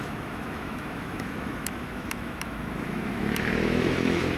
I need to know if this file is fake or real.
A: fake